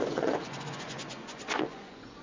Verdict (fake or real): fake